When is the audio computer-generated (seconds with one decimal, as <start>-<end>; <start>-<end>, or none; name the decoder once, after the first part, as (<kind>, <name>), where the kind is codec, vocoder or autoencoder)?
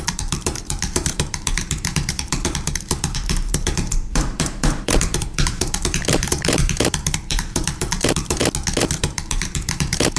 0.0-8.4 (vocoder, BigVGAN v2); 9.0-10.2